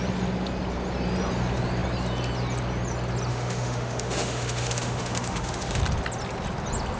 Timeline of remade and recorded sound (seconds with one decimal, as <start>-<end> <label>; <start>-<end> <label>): 0.0-3.3 recorded; 3.3-5.8 remade; 5.8-7.0 recorded